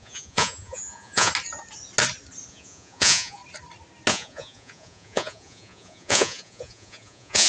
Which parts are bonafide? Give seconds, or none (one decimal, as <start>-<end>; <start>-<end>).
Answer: 1.3-2.5; 3.4-4.1